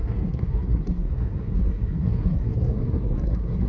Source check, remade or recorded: remade